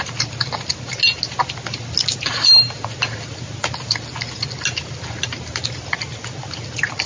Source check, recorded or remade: recorded